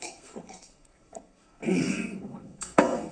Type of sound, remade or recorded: remade